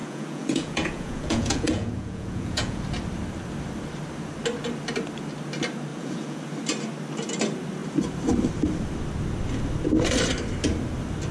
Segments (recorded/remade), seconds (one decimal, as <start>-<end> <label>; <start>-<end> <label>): 0.0-2.8 remade; 2.8-5.9 recorded; 5.9-6.4 remade; 6.4-11.3 recorded